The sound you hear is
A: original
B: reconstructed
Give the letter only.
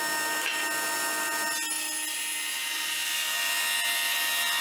A